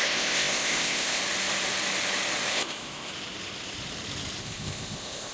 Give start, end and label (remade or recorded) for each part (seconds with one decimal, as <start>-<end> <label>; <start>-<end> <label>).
0.0-1.2 remade; 1.2-2.5 recorded; 2.5-3.1 remade; 3.1-4.4 recorded; 4.4-5.3 remade